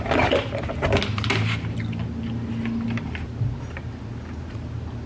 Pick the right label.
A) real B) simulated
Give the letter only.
A